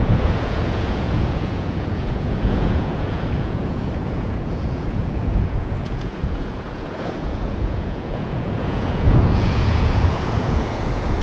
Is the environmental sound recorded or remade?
remade